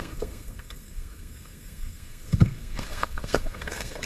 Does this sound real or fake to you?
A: fake